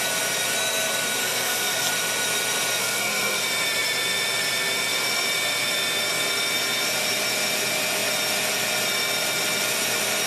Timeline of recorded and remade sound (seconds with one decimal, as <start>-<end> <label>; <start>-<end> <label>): 0.0-1.2 recorded; 1.2-1.9 remade; 1.9-2.8 recorded; 2.8-3.4 remade; 3.4-10.3 recorded